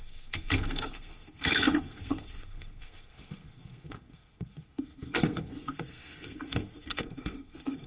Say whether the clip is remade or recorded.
remade